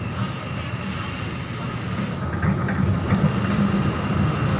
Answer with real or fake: real